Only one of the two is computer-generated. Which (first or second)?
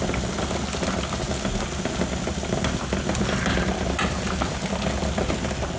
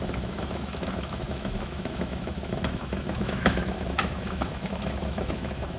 second